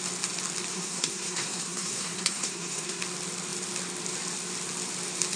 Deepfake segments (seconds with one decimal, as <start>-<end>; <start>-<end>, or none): 0.7-3.0